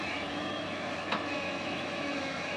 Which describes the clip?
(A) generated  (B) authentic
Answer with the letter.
A